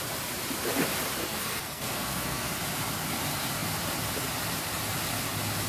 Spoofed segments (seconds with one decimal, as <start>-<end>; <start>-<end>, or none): 1.2-2.5